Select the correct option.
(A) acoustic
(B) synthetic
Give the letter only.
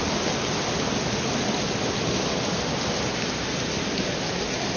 A